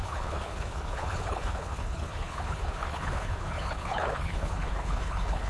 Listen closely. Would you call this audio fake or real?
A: fake